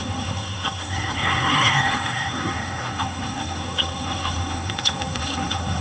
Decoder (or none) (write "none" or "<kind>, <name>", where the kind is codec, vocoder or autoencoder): codec, SNAC